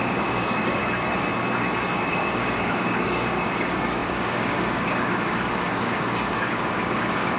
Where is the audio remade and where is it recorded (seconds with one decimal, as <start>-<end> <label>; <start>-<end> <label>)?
0.0-0.8 remade; 0.8-2.1 recorded; 2.1-7.4 remade